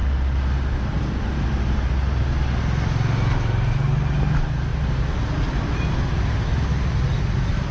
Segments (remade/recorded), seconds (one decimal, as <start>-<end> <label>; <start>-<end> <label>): 0.0-7.7 recorded